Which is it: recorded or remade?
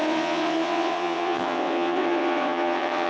remade